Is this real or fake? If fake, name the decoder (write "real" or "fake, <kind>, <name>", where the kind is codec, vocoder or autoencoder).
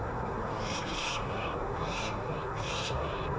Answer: fake, codec, SNAC